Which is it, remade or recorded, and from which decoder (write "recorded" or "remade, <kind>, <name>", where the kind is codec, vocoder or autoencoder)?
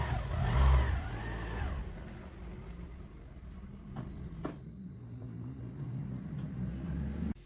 recorded